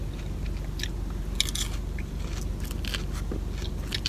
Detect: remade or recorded recorded